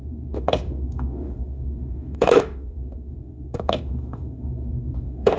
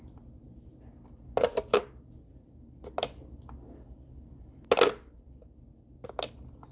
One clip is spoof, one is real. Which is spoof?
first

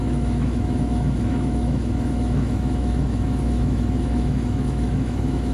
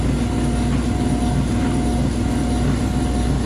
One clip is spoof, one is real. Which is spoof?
first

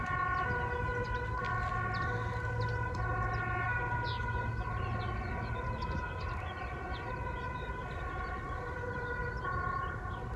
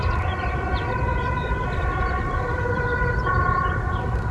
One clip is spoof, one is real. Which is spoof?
second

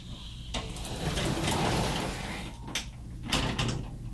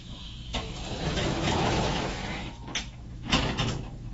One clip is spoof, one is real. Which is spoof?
second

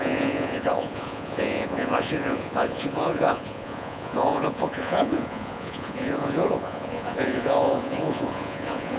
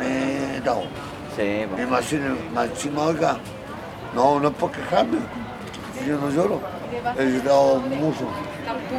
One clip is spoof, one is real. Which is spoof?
first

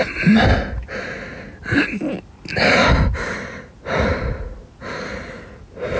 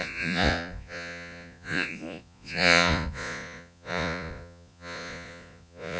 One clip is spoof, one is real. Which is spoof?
second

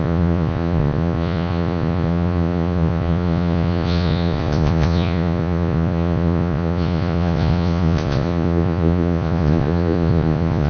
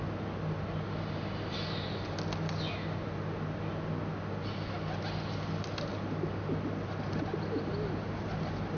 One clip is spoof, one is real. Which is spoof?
first